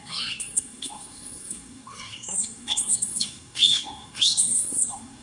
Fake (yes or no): yes